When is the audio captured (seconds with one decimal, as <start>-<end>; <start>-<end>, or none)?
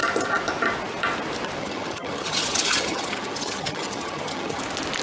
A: 0.0-1.6; 4.6-5.0